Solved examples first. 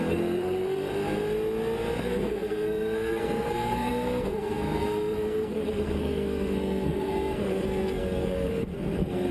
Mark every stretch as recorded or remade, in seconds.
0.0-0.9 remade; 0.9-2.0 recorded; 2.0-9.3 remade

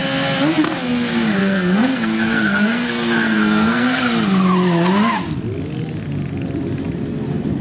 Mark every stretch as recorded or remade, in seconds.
0.0-1.4 recorded; 1.4-4.0 remade; 4.0-7.6 recorded

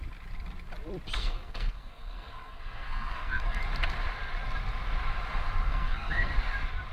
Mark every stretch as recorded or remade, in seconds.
0.0-1.2 recorded; 1.2-3.6 remade; 3.6-5.7 recorded; 5.7-6.3 remade; 6.3-6.9 recorded

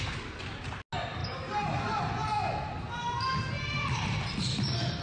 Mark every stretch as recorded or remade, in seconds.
0.0-5.0 recorded

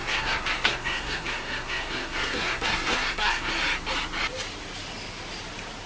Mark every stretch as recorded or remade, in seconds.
0.0-3.5 remade; 3.5-5.9 recorded

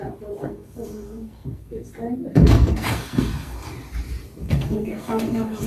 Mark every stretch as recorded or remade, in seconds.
0.0-0.4 recorded; 0.4-1.9 remade; 1.9-2.3 recorded; 2.3-3.7 remade; 3.7-4.4 recorded; 4.4-5.7 remade

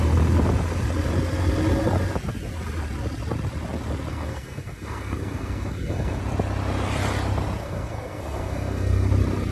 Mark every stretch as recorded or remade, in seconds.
0.0-4.1 recorded; 4.1-6.2 remade; 6.2-7.6 recorded; 7.6-9.1 remade; 9.1-9.5 recorded